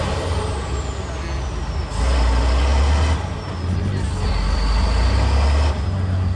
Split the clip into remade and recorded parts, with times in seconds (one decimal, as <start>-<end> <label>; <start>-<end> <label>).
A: 0.0-6.4 recorded